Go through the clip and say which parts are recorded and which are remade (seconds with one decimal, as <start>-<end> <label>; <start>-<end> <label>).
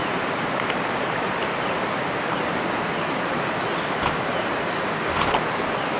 0.0-3.6 remade; 3.6-4.3 recorded; 4.3-5.0 remade; 5.0-6.0 recorded